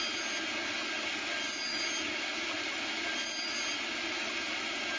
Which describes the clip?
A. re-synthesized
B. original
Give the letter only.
B